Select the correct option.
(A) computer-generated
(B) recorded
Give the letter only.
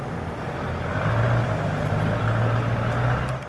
B